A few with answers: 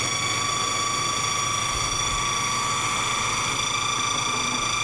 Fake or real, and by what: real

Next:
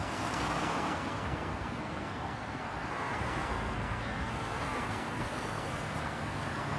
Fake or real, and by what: fake, codec, SNAC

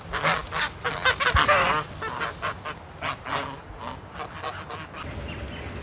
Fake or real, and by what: real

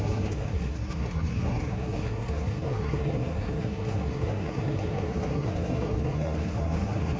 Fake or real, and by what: fake, codec, SNAC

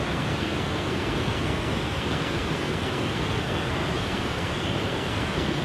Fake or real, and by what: fake, codec, SNAC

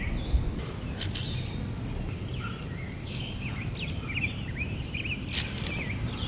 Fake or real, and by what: real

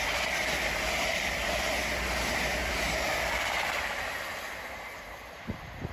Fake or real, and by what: real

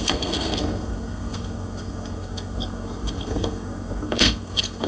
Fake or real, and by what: fake, codec, SNAC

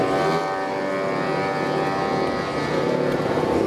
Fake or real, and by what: real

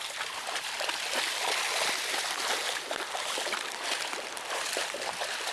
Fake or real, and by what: real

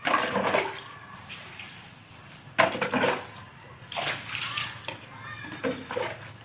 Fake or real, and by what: real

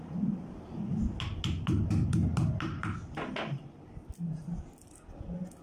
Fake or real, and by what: real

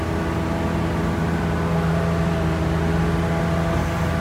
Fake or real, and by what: real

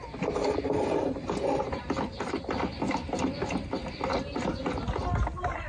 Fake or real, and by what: real